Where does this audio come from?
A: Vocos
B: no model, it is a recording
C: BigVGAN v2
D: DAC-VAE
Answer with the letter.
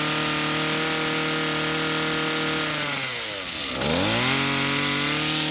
B